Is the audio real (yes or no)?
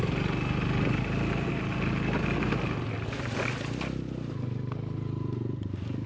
yes